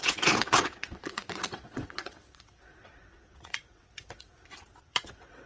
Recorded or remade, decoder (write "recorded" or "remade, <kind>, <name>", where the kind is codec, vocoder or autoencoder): remade, vocoder, WaveNeXt